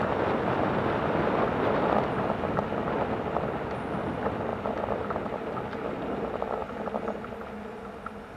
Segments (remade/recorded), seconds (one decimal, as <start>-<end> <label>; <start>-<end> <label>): 0.0-8.4 recorded